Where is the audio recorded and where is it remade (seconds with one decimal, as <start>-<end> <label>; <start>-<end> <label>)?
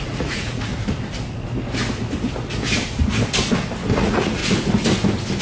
0.0-0.7 remade; 0.7-3.9 recorded; 3.9-4.4 remade; 4.4-5.4 recorded